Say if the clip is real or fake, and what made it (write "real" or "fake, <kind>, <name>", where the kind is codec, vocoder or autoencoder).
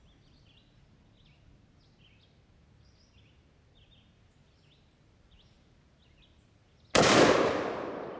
real